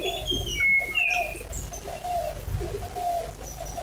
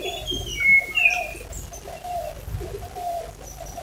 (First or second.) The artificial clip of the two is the second